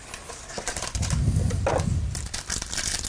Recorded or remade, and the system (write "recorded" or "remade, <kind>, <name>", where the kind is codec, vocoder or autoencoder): recorded